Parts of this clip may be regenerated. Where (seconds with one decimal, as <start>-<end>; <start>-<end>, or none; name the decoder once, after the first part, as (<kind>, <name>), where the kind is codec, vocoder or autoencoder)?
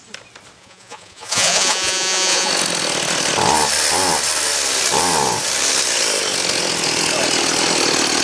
0.6-2.5 (vocoder, Vocos)